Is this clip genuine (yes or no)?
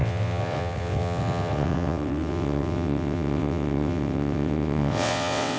no